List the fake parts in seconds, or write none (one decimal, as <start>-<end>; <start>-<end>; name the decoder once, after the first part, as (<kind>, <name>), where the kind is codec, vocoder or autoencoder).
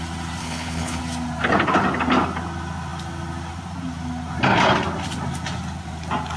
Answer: 0.4-1.0 (codec, HILCodec)